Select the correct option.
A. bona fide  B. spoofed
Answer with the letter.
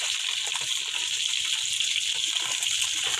A